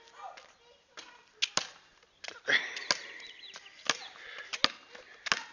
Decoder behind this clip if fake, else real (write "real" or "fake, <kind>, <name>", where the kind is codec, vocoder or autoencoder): real